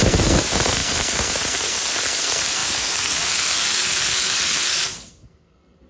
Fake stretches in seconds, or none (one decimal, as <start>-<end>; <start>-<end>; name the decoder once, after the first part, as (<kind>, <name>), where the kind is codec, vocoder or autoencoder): 0.0-5.9 (codec, SNAC)

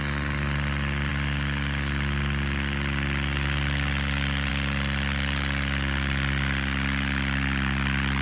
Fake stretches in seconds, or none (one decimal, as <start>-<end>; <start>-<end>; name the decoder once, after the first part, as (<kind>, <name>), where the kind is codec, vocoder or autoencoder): none

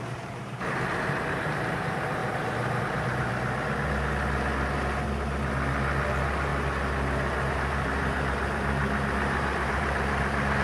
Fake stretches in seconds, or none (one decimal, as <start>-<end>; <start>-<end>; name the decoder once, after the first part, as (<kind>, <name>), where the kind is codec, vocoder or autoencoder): 0.0-3.3 (vocoder, BigVGAN v2); 6.1-6.5; 7.5-10.6

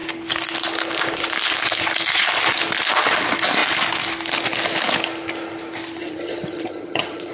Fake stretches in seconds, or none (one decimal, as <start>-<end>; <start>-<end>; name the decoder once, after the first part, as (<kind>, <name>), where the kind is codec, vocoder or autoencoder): 6.0-7.3 (vocoder, HiFi-GAN)

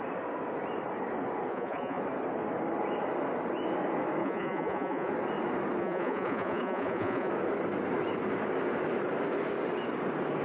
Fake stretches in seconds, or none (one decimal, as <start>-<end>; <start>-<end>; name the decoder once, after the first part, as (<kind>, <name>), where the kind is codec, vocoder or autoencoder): 1.5-2.0 (vocoder, Vocos); 4.2-5.1; 5.8-7.3

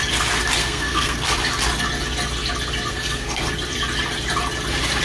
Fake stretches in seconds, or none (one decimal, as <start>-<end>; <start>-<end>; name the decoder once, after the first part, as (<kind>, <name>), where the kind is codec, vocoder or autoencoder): 0.6-1.3 (codec, SNAC); 2.9-3.5

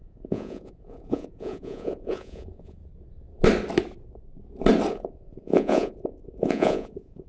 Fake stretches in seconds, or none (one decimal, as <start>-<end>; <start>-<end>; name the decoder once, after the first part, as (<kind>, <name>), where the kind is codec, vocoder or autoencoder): 0.0-2.8 (vocoder, Vocos); 4.9-7.3